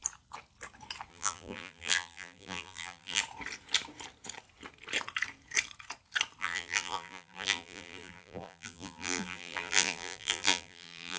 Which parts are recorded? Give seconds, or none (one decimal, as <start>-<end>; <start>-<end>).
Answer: 0.0-1.1; 3.2-6.4